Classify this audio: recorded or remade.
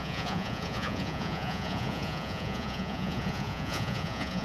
remade